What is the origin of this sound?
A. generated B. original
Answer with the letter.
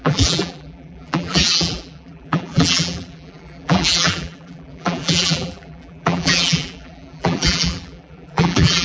A